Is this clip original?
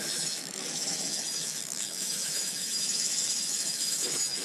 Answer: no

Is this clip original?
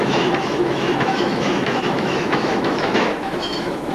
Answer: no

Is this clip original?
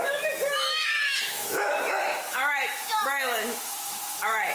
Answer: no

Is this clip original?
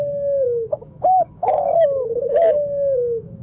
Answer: no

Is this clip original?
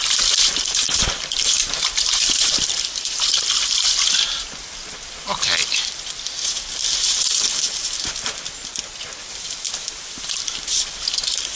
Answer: yes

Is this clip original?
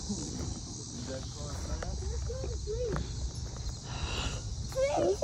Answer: yes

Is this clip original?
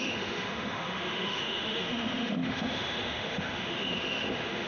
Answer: no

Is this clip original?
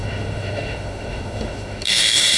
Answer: no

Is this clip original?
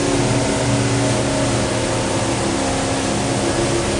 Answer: yes